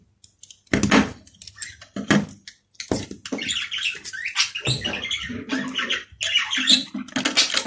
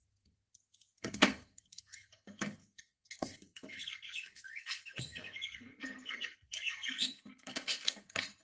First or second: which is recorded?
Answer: first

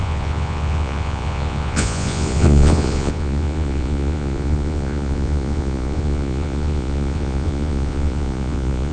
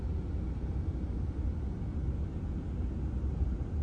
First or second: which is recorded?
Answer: second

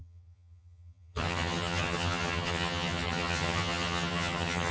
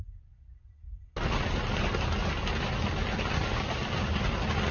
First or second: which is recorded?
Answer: second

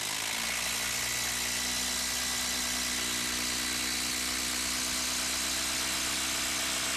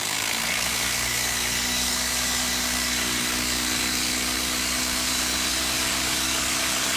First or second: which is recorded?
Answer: first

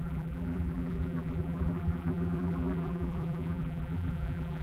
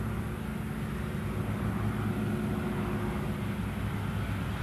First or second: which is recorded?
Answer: second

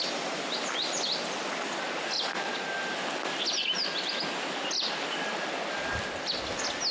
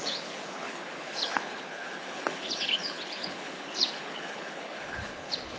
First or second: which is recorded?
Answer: first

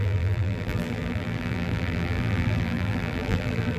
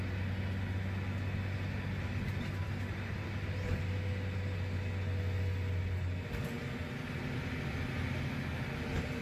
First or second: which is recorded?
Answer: second